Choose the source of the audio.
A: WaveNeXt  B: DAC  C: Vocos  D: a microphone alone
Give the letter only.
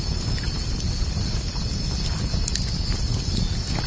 D